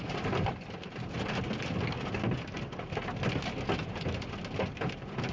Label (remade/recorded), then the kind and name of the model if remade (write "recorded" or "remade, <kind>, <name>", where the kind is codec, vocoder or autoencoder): recorded